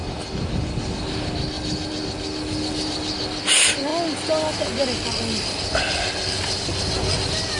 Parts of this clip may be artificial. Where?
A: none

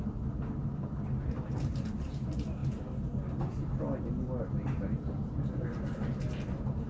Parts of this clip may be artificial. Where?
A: none